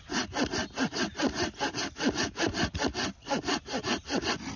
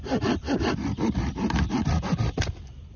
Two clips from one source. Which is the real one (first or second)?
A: first